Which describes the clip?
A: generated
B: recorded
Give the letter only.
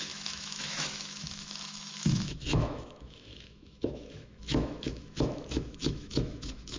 A